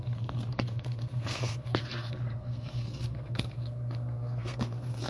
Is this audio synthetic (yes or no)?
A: yes